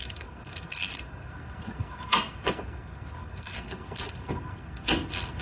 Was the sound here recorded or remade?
remade